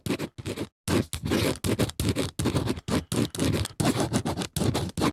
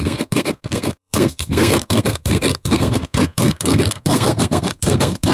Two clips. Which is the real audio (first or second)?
first